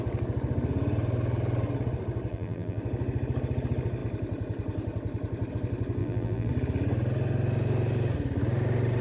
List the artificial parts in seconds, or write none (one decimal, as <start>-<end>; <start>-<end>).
2.3-2.8; 6.0-6.5